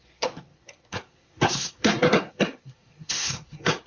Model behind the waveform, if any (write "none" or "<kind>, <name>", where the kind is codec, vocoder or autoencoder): codec, SNAC